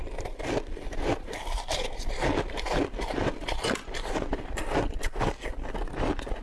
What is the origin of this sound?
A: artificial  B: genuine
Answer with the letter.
A